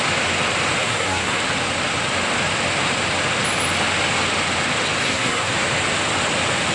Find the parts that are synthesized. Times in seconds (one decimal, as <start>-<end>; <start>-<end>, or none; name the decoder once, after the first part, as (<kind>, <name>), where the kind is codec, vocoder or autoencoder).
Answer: 0.8-1.4 (codec, SNAC); 5.0-5.5